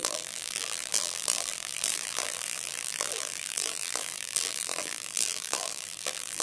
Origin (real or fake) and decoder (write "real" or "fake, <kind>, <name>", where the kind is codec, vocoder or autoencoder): fake, vocoder, BigVGAN v2